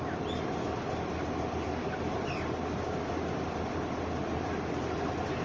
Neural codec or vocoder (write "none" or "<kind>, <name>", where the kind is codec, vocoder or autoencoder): none